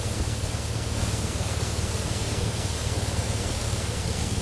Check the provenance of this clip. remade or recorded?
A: remade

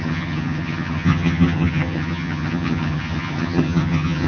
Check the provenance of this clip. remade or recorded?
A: remade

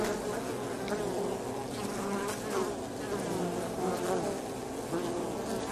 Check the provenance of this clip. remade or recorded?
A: recorded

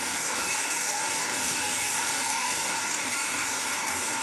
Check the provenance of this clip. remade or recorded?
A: remade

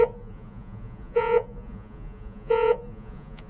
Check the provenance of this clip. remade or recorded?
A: remade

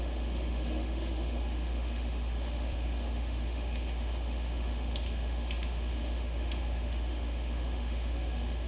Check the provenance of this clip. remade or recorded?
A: remade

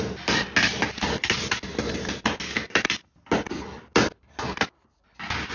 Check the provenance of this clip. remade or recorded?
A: recorded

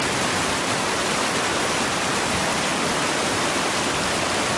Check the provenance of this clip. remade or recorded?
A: recorded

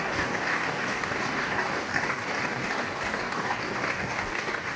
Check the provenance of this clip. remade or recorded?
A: remade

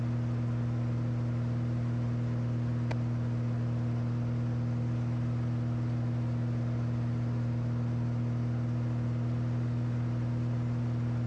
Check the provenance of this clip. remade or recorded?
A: recorded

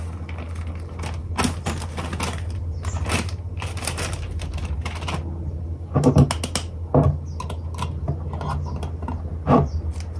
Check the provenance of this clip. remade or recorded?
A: recorded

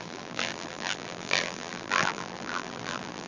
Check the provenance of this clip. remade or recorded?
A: remade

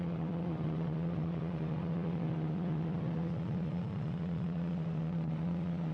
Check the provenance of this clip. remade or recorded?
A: remade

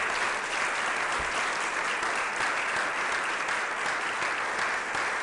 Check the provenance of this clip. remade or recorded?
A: recorded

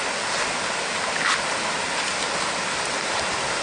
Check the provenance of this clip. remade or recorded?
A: recorded